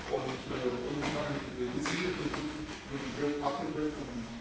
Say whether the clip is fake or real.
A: fake